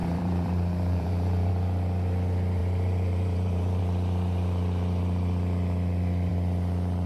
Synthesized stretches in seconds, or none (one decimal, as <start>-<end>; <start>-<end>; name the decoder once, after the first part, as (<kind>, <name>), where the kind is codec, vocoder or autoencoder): 0.0-1.5 (vocoder, BigVGAN v2); 2.6-3.8

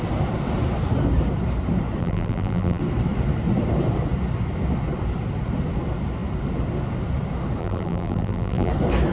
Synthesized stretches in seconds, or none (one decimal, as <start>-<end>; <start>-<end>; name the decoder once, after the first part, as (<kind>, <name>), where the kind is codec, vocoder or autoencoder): 2.0-2.8 (vocoder, BigVGAN v2); 7.6-8.7

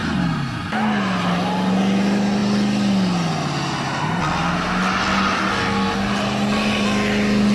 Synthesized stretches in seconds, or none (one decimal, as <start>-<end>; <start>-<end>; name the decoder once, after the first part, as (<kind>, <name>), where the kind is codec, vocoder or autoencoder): 0.0-0.6 (vocoder, BigVGAN v2)

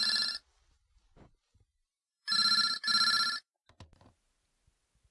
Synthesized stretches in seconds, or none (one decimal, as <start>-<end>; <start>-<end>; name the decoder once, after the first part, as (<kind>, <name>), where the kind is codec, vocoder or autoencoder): 0.4-3.5 (vocoder, BigVGAN v2)